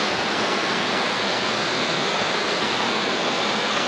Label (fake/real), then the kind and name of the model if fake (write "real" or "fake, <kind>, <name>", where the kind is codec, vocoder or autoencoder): fake, codec, SNAC